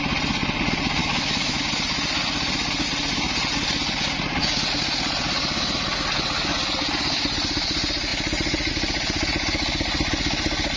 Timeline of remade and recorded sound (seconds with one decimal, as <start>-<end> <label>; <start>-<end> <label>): 0.0-1.0 recorded; 1.0-1.6 remade; 1.6-10.8 recorded

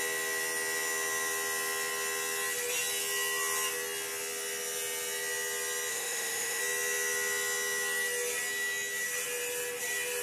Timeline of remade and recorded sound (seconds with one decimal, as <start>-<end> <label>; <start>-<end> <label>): 0.0-5.9 recorded; 5.9-6.6 remade; 6.6-10.2 recorded